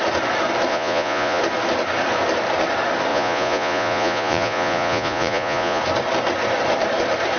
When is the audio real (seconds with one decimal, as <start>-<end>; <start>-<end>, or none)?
0.0-0.7; 1.4-3.1; 5.8-7.4